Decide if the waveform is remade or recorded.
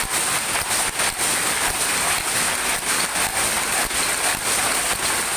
recorded